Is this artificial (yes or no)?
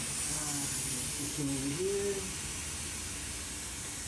no